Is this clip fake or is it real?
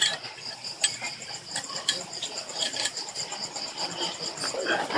fake